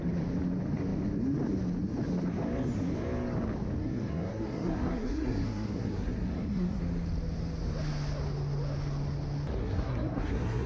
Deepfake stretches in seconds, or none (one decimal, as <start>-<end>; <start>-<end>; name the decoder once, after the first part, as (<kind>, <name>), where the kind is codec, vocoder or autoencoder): 3.8-6.8 (codec, SNAC); 9.6-10.7